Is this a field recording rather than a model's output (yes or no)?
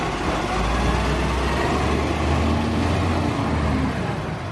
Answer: yes